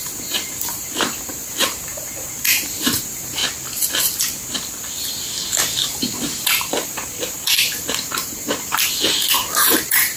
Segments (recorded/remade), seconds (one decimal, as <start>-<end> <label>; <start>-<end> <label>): 0.0-3.4 remade; 3.4-6.0 recorded; 6.0-10.2 remade